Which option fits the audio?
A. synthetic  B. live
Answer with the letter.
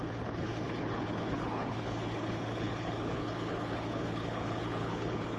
A